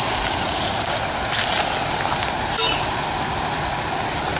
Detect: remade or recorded recorded